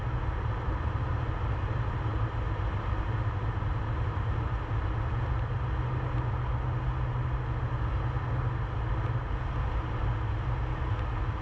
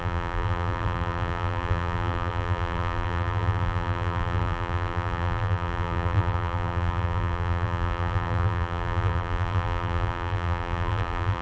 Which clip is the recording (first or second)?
first